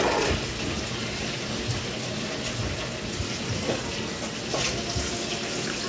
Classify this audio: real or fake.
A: real